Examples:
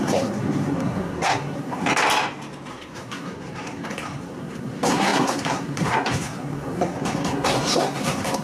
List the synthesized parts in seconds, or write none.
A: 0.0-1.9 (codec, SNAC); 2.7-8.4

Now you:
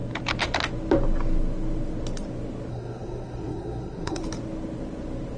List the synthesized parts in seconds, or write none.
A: 2.7-4.2 (codec, SNAC)

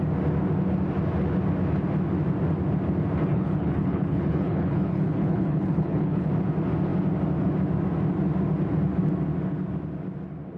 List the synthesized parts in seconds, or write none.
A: 3.3-6.3 (codec, HILCodec)

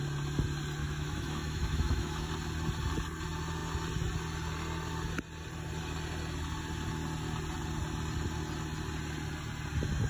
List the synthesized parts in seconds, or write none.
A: 0.8-2.3 (autoencoder, DAC-VAE)

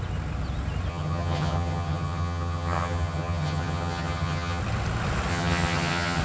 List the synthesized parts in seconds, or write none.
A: 0.9-4.6 (vocoder, HiFi-GAN); 5.3-6.2

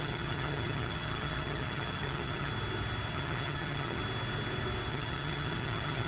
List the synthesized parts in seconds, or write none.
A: 0.0-2.5 (vocoder, HiFi-GAN); 3.1-4.0; 4.9-6.1